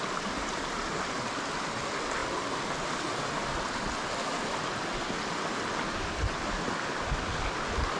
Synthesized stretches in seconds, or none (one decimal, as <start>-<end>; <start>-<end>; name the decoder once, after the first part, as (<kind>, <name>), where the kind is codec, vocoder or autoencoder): none